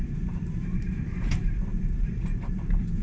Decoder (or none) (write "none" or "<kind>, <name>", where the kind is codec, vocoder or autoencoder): vocoder, BigVGAN v2